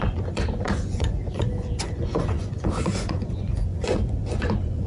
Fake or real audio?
fake